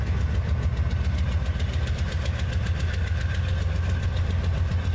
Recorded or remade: recorded